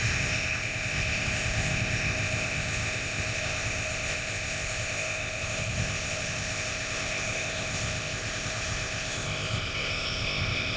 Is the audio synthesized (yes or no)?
yes